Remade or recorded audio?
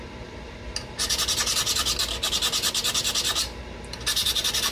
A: remade